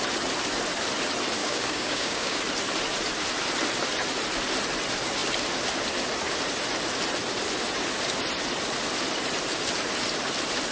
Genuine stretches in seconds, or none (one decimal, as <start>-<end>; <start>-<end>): 0.0-1.4; 2.4-10.7